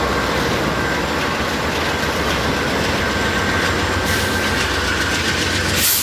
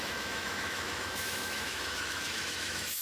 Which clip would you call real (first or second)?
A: first